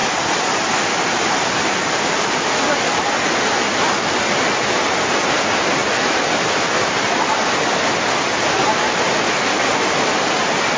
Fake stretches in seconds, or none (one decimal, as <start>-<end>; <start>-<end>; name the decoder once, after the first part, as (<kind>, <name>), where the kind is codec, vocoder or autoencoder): 0.0-2.3 (vocoder, BigVGAN v2); 5.8-8.3